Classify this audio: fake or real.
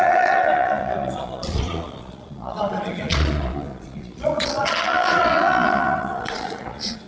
fake